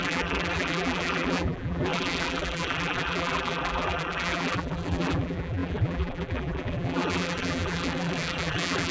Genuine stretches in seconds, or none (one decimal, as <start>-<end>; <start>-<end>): none